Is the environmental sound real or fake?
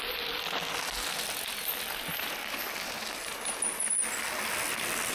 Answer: real